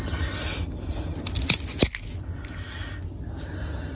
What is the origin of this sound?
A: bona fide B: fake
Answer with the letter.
A